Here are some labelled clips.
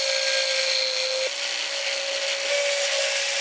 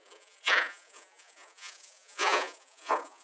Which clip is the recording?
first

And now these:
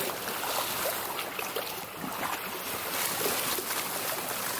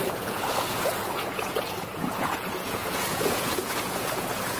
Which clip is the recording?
first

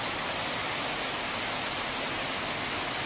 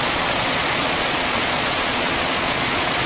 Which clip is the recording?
first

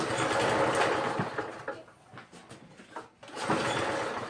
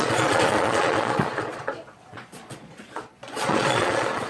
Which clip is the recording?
first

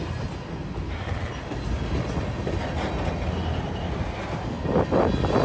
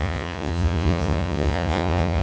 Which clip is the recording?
first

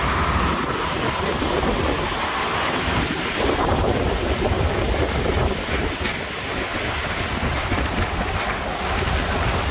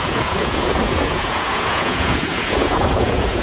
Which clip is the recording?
first